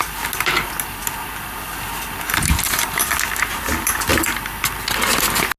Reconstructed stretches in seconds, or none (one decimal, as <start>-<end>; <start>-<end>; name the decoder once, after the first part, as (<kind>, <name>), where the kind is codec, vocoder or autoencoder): none